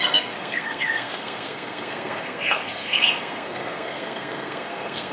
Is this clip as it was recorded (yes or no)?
no